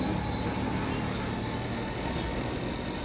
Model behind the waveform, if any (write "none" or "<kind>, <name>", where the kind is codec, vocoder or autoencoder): none